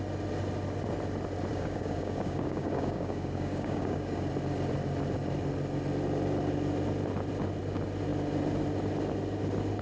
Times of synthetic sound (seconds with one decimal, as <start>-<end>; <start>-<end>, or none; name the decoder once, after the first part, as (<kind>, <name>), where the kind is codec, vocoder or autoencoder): 1.5-4.3 (codec, DAC)